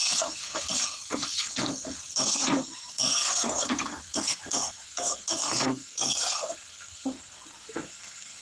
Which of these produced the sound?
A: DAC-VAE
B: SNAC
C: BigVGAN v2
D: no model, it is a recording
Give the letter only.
B